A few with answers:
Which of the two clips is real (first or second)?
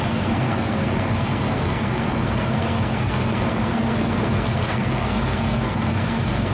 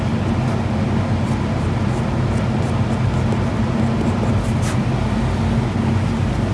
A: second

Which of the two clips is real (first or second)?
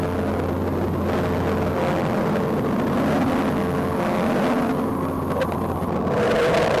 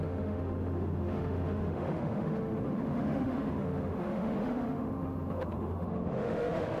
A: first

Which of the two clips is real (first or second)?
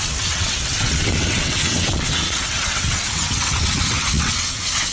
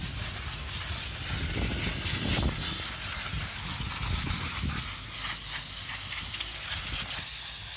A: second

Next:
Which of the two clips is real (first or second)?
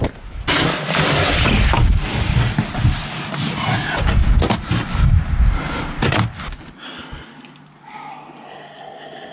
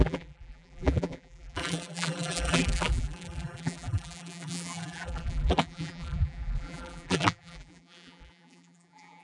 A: first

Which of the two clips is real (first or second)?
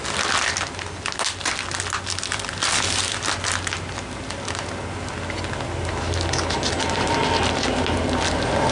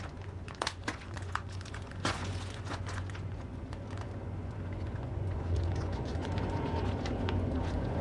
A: first